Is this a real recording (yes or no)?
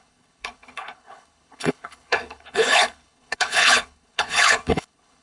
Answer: no